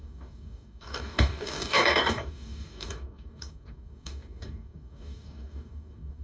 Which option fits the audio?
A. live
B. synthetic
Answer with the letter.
B